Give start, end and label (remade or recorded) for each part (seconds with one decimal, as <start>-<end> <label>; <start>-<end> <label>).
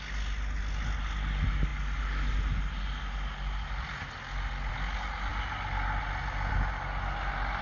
0.0-7.6 recorded